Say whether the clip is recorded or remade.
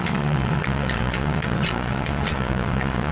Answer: remade